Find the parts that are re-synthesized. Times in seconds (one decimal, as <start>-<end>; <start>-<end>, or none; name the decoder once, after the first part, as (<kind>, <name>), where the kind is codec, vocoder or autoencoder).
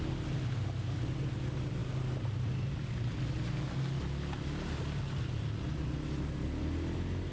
none